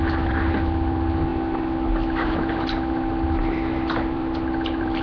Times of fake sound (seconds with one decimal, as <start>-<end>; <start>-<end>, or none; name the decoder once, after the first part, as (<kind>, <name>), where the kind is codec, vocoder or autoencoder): none